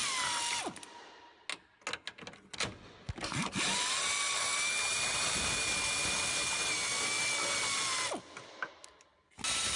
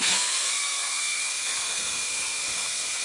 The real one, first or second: first